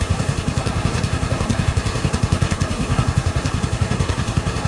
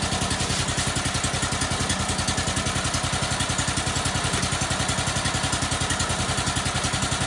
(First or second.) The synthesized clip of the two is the first